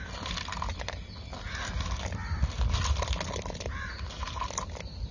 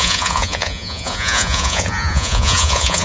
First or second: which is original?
first